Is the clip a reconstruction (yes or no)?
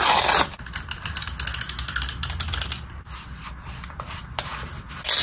no